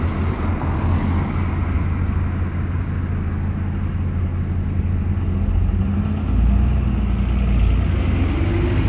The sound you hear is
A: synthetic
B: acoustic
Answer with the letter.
B